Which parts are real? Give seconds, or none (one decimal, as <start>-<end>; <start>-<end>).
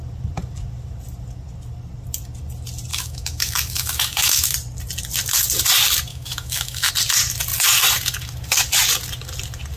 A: 0.0-2.9; 4.5-6.1; 6.9-9.8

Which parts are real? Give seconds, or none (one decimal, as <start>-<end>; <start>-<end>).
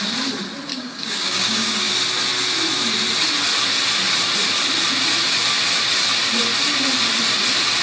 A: 0.0-0.7; 1.9-7.8